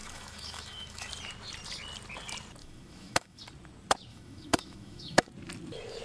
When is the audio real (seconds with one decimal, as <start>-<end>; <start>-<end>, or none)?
1.1-2.6; 3.4-4.1; 5.3-6.0